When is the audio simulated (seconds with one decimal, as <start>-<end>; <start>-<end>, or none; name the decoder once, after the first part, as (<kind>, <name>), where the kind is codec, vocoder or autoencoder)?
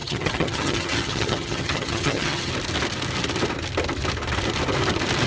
0.0-2.5 (vocoder, HiFi-GAN)